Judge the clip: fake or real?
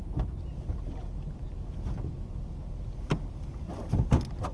real